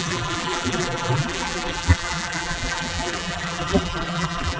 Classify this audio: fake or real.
fake